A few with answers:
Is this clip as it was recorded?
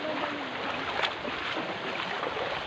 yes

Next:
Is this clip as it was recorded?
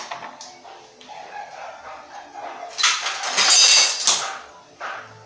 yes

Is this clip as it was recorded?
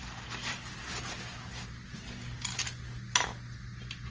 yes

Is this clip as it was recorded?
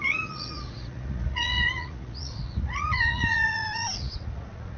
no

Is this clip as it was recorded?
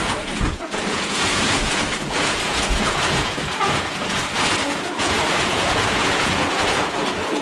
no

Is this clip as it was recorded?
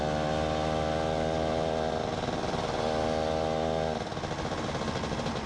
yes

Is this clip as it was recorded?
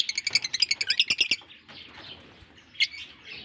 yes